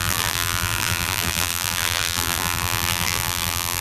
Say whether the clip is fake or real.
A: fake